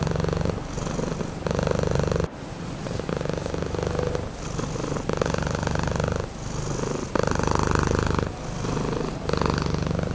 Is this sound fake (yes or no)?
no